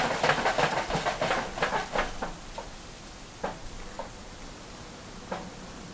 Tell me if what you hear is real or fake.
real